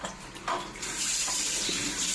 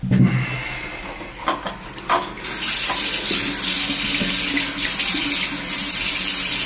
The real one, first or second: second